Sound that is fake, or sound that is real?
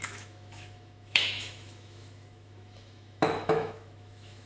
fake